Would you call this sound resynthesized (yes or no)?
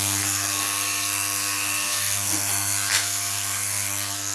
yes